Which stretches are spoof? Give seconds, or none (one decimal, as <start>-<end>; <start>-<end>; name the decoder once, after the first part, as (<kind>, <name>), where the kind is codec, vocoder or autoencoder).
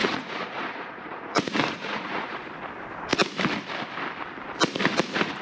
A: 0.0-2.5 (vocoder, Vocos)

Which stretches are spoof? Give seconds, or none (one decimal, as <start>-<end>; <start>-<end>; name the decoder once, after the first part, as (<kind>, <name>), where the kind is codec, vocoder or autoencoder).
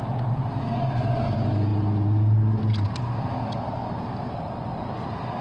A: none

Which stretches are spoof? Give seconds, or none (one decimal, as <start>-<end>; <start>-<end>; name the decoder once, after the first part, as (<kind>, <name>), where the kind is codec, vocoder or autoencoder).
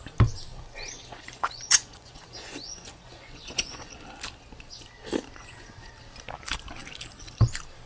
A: 0.5-3.9 (vocoder, Vocos); 5.4-5.9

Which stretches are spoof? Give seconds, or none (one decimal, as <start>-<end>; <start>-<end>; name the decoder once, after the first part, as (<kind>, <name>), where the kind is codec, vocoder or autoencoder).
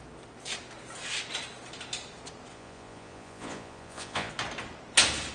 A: 2.5-4.3 (vocoder, Vocos)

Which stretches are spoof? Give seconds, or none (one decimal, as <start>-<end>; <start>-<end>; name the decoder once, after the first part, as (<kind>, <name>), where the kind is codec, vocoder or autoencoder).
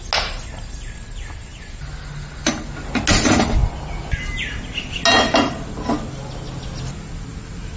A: none